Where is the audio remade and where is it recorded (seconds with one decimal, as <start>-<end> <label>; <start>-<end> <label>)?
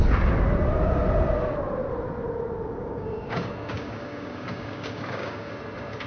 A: 0.0-2.8 recorded; 2.8-5.5 remade; 5.5-6.1 recorded